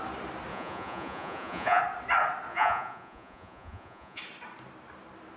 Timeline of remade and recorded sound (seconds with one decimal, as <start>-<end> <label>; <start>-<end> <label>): 0.0-0.5 recorded; 0.5-1.8 remade; 1.8-2.5 recorded; 2.5-4.2 remade; 4.2-5.4 recorded